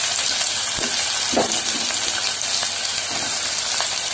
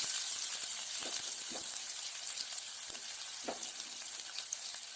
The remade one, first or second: second